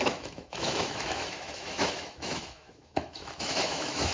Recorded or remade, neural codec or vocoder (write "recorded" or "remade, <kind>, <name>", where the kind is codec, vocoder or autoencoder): remade, autoencoder, DAC-VAE